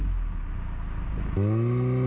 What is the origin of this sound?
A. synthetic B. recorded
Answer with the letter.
B